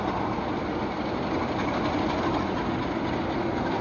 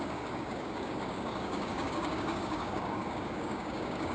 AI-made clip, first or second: second